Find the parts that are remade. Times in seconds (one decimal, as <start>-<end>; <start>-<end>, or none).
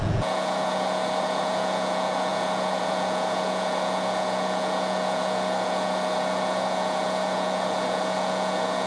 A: 0.0-8.9